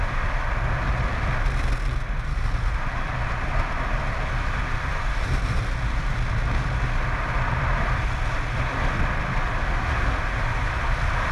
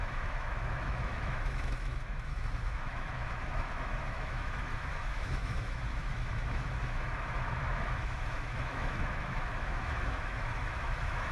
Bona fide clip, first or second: first